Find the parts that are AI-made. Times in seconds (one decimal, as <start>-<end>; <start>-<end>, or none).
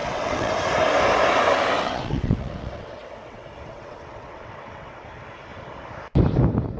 0.0-0.5; 1.8-5.1